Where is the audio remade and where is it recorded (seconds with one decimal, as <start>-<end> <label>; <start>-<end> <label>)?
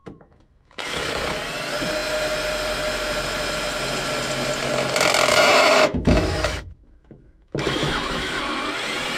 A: 0.0-1.1 remade; 1.1-5.3 recorded; 5.3-8.4 remade; 8.4-9.2 recorded